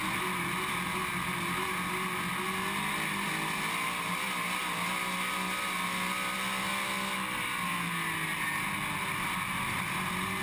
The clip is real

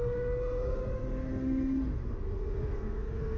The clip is fake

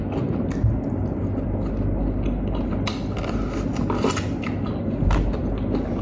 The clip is real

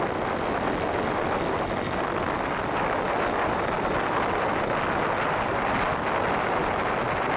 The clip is real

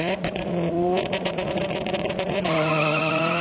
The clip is fake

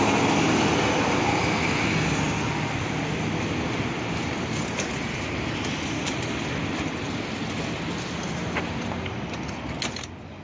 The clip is real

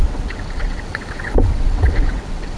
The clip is fake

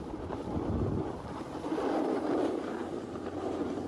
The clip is real